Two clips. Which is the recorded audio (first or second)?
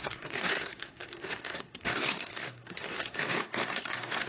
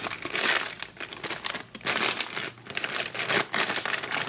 second